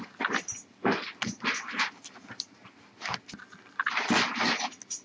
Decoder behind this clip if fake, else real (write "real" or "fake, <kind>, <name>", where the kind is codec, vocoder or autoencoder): real